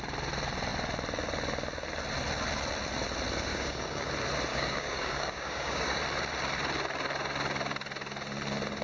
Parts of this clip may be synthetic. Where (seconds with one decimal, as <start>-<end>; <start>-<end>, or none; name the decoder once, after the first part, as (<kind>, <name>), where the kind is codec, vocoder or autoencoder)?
3.5-4.1 (codec, DAC); 4.5-6.0